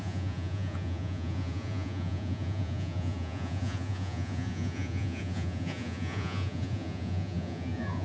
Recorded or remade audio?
remade